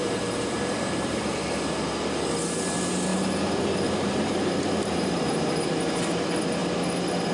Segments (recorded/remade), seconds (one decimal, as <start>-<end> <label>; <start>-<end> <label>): 0.0-2.0 remade; 2.0-3.1 recorded; 3.1-6.0 remade; 6.0-7.3 recorded

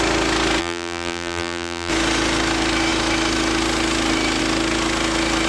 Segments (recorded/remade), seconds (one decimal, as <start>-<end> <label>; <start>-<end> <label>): 0.0-0.6 recorded; 0.6-1.9 remade; 1.9-5.5 recorded

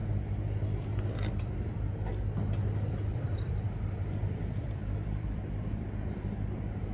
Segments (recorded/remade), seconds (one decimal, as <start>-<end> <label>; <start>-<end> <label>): 0.0-1.3 recorded; 1.3-2.1 remade; 2.1-2.9 recorded; 2.9-6.9 remade

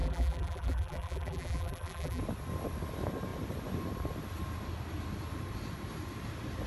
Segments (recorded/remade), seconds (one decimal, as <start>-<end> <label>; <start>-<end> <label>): 0.0-2.2 remade; 2.2-6.7 recorded

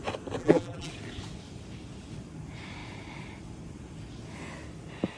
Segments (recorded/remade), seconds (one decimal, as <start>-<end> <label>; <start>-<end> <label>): 0.0-0.4 recorded; 0.4-0.9 remade; 0.9-5.2 recorded